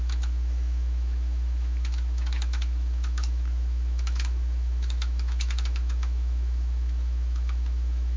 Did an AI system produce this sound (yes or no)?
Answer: yes